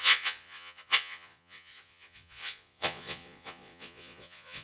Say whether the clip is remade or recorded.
remade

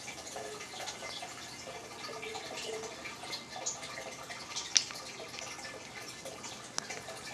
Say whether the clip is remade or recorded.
recorded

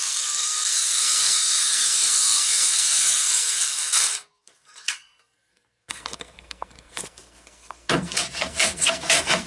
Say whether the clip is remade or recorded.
remade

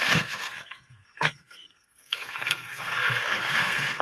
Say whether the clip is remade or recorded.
remade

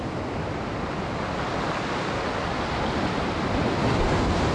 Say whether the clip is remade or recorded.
recorded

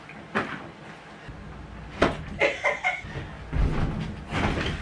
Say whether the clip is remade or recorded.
recorded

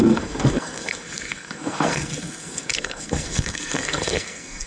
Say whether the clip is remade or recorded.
remade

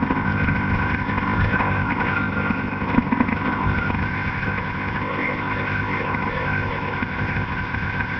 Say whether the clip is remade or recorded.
remade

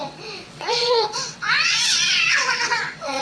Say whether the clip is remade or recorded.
remade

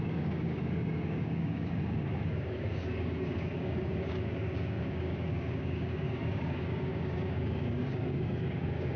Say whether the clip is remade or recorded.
remade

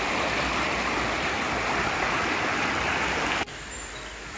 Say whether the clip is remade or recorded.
recorded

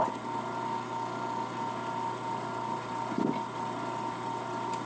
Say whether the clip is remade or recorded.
recorded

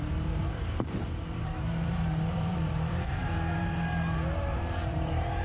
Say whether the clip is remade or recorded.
remade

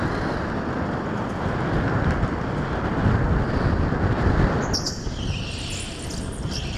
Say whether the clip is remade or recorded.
recorded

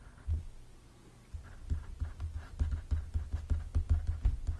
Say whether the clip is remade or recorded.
recorded